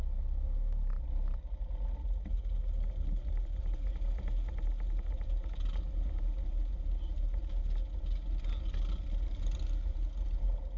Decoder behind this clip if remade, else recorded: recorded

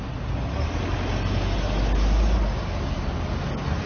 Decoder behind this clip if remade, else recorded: recorded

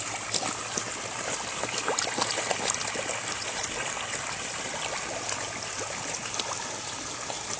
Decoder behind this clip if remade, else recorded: recorded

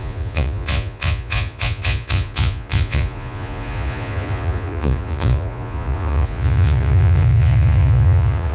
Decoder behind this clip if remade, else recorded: remade, vocoder, Vocos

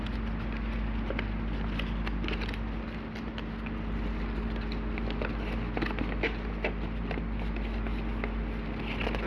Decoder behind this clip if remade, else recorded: recorded